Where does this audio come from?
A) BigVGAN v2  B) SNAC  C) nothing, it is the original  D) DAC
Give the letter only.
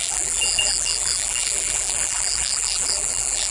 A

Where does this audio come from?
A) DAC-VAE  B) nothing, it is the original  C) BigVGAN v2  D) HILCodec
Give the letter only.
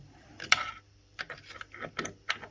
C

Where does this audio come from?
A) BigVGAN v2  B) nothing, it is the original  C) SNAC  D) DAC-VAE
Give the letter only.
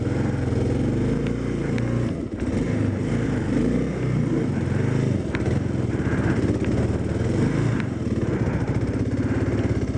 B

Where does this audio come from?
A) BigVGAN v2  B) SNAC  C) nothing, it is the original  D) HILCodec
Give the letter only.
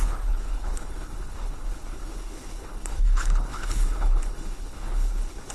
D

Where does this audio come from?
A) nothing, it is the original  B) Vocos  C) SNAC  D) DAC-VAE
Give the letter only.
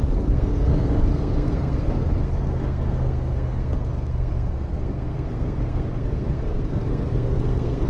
C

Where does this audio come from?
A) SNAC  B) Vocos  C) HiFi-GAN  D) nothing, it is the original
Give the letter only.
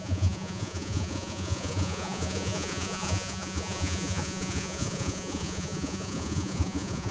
B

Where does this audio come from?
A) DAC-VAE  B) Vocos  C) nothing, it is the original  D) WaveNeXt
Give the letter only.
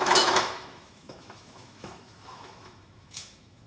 A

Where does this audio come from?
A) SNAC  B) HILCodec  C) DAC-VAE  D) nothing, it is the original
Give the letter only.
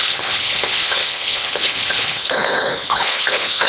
B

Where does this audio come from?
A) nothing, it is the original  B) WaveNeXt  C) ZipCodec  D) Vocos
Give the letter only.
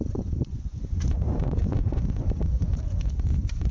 D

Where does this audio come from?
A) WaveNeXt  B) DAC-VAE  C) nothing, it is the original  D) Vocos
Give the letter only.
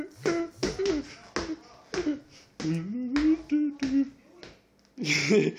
C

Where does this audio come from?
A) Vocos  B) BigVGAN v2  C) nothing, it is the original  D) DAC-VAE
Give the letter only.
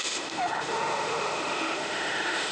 D